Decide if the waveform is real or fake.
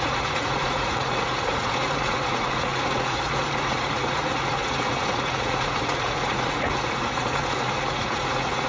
fake